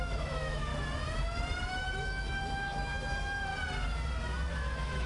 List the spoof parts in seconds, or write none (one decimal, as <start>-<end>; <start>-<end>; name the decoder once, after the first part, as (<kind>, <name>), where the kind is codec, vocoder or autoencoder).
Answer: 0.0-0.7 (autoencoder, DAC-VAE); 1.7-3.5; 4.5-5.1